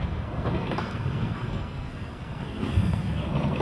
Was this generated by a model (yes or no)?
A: yes